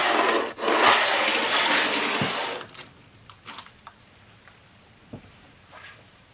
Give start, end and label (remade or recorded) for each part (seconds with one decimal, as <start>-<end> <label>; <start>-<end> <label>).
0.0-6.3 recorded